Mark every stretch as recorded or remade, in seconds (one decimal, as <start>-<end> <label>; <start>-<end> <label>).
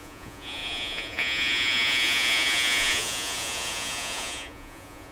0.0-5.1 remade